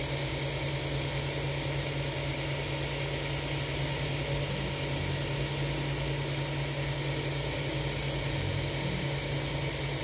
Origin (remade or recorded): recorded